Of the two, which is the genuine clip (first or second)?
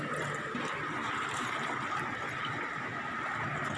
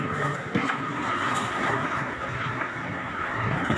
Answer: first